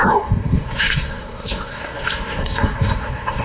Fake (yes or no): yes